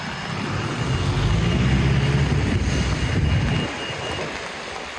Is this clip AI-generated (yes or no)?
no